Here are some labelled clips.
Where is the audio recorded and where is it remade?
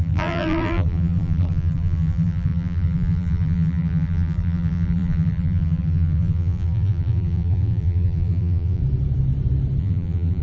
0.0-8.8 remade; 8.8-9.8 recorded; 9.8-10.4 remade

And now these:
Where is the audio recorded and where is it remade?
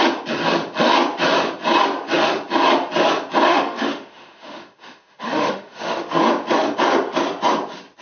0.0-3.5 recorded; 3.5-6.2 remade; 6.2-8.0 recorded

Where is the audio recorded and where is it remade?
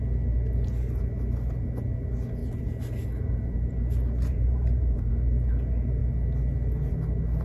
0.0-2.4 recorded; 2.4-5.1 remade; 5.1-7.4 recorded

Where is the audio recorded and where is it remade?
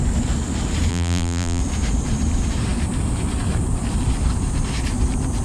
0.0-0.9 recorded; 0.9-1.6 remade; 1.6-5.4 recorded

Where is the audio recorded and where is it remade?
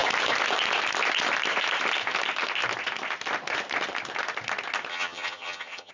0.0-4.9 recorded; 4.9-5.9 remade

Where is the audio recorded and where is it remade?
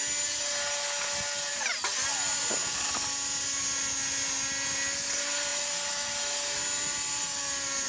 0.0-7.9 recorded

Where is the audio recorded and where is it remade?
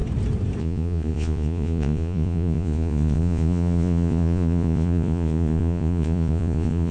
0.0-0.6 recorded; 0.6-6.9 remade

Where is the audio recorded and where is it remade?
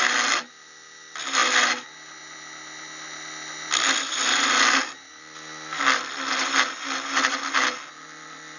0.0-8.6 recorded